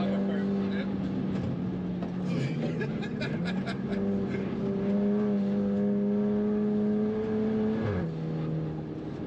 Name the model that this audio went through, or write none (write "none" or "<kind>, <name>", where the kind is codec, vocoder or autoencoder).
none